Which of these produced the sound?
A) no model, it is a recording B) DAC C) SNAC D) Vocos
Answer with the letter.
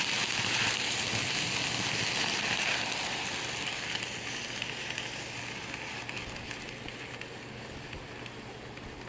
A